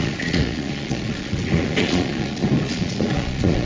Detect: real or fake fake